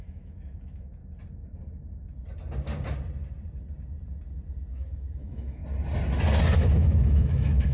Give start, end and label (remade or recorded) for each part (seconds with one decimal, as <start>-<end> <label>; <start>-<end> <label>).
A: 0.0-1.0 remade; 1.0-4.7 recorded; 4.7-5.6 remade; 5.6-6.8 recorded; 6.8-7.7 remade